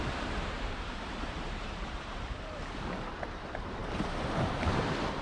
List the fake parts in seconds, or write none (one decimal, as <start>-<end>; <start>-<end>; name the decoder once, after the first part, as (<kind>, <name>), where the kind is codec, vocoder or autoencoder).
0.0-5.2 (vocoder, BigVGAN v2)